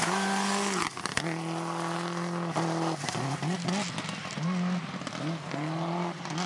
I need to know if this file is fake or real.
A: real